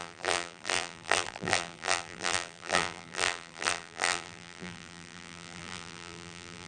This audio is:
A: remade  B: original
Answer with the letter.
A